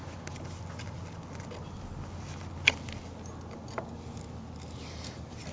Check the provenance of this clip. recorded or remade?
recorded